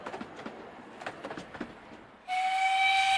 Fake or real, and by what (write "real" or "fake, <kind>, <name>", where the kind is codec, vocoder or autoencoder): real